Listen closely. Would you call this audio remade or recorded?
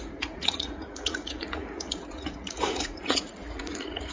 remade